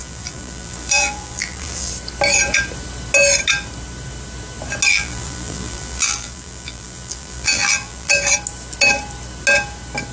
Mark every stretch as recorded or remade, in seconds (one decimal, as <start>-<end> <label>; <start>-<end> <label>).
0.0-1.9 remade; 1.9-4.9 recorded; 4.9-8.1 remade; 8.1-10.1 recorded